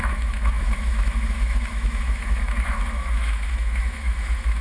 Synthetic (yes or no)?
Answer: yes